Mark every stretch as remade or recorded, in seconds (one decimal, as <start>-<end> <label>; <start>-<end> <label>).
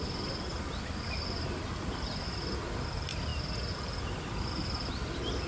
0.0-5.5 recorded